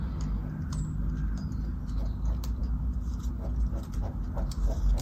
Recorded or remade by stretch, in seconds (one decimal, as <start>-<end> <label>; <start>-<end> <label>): 0.0-5.0 recorded